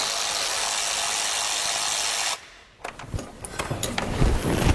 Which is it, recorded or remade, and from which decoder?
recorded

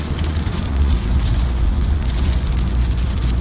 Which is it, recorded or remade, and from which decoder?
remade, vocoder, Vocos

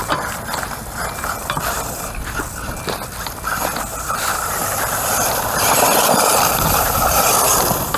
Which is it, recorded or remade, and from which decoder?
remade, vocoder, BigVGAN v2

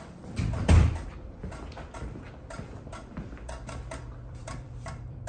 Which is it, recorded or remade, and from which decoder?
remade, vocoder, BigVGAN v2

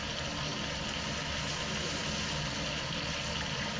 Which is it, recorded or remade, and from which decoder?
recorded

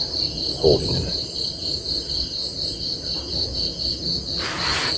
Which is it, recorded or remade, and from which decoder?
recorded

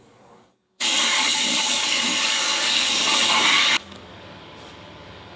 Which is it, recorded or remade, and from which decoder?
remade, codec, DAC